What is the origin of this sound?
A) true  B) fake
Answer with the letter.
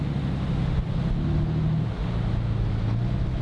A